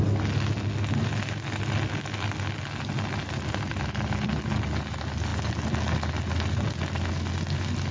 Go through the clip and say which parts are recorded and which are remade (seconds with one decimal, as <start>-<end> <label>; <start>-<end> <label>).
0.0-7.9 recorded